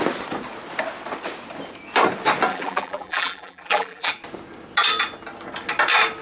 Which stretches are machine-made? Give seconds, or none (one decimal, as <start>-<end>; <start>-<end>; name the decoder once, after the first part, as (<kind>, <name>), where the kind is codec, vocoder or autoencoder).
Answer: 2.5-4.1 (vocoder, BigVGAN v2)